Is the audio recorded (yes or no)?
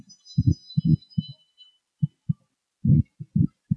yes